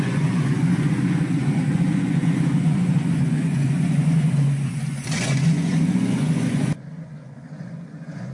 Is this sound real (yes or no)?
no